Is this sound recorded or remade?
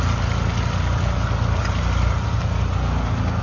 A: recorded